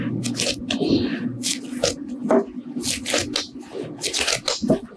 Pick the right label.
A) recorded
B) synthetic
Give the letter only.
A